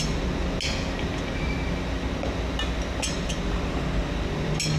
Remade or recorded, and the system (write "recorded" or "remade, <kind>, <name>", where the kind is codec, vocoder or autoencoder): recorded